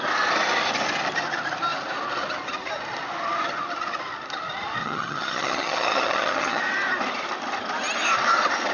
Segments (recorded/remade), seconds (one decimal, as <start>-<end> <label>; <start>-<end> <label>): 0.0-4.8 recorded; 4.8-6.6 remade; 6.6-8.7 recorded